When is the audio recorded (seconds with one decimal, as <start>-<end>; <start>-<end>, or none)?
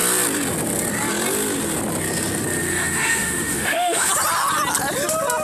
0.0-2.7; 4.1-5.4